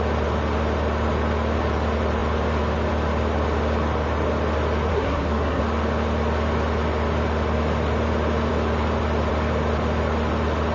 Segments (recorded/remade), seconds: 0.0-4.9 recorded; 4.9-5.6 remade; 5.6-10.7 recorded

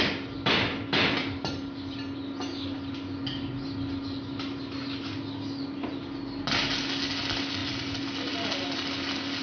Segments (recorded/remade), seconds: 0.0-9.4 recorded

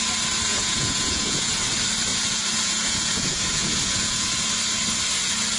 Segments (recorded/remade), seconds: 0.0-0.5 recorded; 0.5-1.6 remade; 1.6-2.1 recorded; 2.1-4.5 remade; 4.5-5.6 recorded

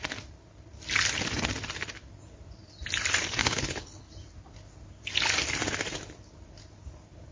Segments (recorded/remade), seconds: 0.0-3.4 recorded; 3.4-4.1 remade; 4.1-7.3 recorded

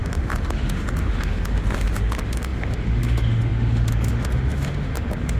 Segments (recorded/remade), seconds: 0.0-5.4 remade

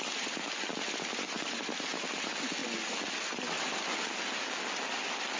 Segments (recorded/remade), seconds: 0.0-5.4 recorded

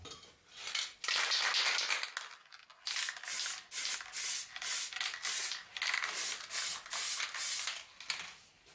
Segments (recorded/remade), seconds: 0.0-8.7 recorded